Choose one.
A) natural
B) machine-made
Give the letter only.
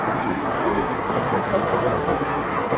B